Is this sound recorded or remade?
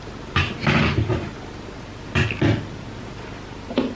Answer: recorded